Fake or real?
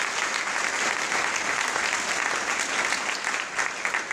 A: real